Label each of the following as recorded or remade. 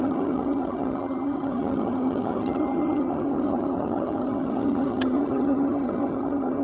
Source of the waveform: remade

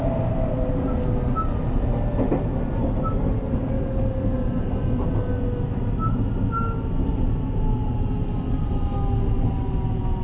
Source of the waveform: recorded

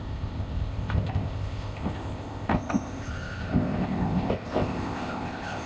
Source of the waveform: remade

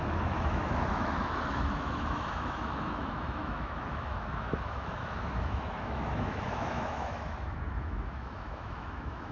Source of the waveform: remade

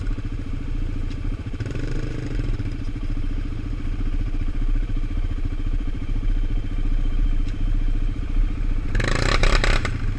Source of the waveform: remade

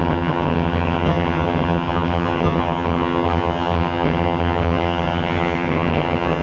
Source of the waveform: remade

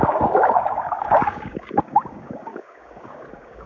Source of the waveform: remade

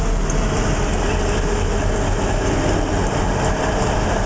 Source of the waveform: recorded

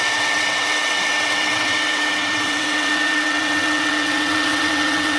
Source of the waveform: remade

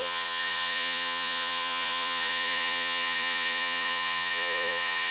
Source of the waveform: remade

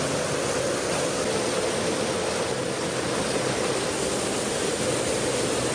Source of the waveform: recorded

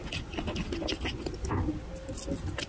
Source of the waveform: recorded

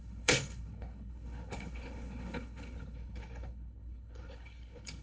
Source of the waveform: remade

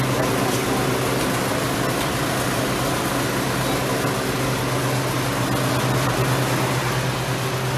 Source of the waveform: recorded